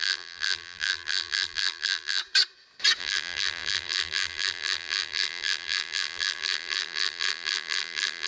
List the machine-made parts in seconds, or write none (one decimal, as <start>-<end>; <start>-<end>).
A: 0.0-2.2; 3.0-8.3

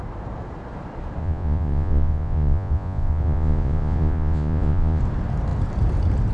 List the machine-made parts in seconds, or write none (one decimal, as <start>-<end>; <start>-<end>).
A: 1.2-5.0

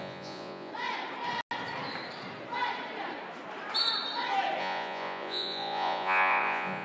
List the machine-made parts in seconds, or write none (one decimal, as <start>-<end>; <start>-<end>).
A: 0.0-0.7; 4.6-6.8